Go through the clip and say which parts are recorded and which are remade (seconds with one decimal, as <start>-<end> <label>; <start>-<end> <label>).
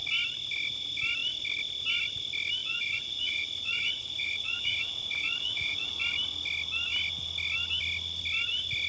0.0-2.6 recorded; 2.6-6.0 remade; 6.0-8.9 recorded